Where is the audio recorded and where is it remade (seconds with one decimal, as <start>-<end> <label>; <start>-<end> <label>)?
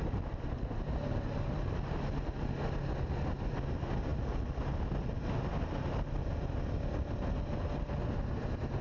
0.0-8.8 recorded